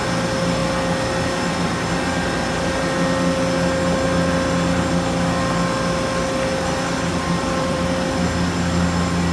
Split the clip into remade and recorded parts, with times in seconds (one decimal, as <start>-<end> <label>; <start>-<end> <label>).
0.0-7.1 recorded; 7.1-7.8 remade; 7.8-9.3 recorded